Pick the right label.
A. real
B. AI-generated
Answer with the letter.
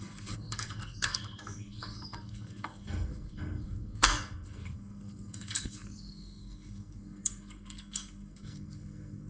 B